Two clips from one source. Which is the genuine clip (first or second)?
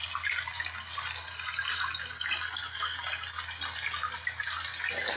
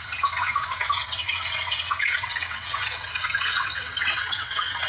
first